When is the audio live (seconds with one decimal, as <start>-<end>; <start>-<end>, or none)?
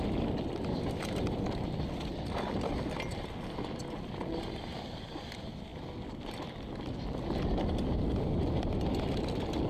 0.0-9.7